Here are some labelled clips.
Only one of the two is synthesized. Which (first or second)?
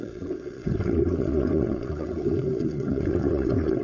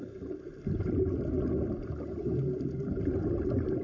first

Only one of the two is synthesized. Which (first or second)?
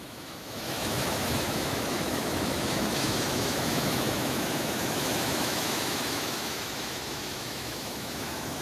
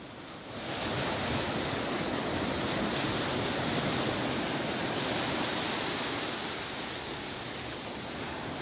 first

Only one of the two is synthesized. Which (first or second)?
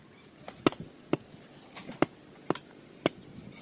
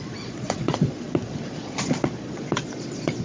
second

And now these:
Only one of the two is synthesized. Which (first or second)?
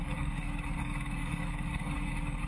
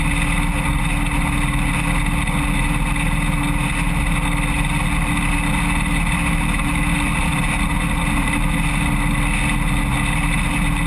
first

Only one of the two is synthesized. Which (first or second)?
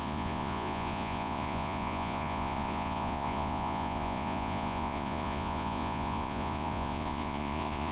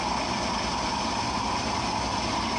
first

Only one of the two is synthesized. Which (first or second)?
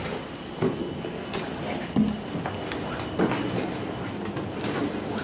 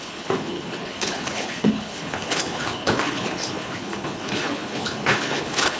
second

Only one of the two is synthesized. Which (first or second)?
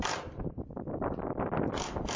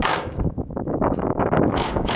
second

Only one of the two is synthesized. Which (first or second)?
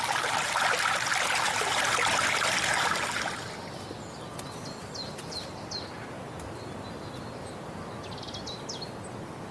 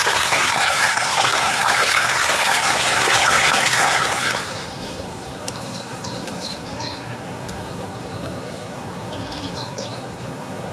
second